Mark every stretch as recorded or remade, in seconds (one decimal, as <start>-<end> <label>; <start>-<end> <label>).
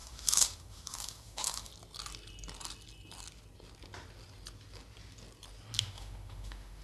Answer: 0.0-1.7 remade; 1.7-5.8 recorded; 5.8-6.8 remade